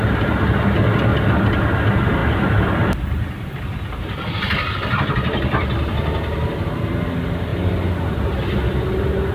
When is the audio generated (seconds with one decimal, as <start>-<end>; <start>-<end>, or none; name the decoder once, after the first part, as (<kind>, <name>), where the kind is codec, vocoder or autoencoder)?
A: 2.2-7.1 (vocoder, BigVGAN v2)